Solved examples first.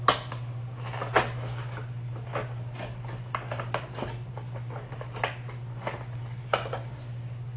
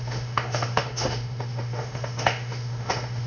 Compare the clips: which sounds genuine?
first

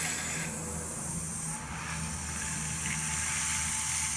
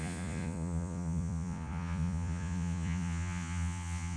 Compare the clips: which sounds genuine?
first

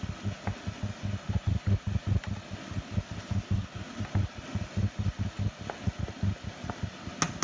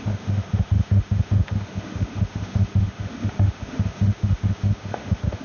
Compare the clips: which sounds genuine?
first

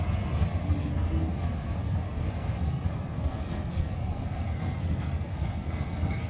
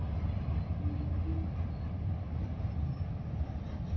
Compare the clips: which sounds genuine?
second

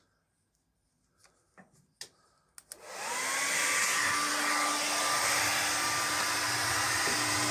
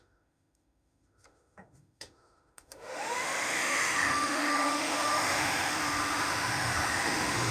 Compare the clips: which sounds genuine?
first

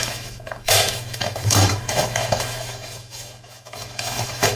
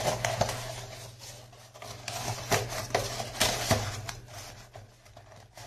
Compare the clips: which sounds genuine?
second